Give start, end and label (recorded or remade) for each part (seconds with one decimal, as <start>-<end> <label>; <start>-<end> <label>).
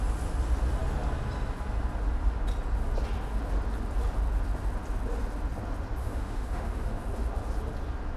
0.0-6.0 recorded; 6.0-7.0 remade; 7.0-8.2 recorded